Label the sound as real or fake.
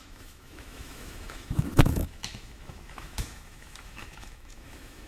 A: fake